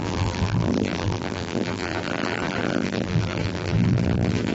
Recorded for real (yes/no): no